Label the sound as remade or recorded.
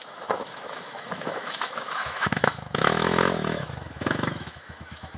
remade